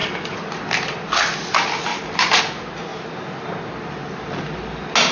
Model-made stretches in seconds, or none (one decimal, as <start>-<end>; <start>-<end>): 1.9-2.4; 2.9-3.5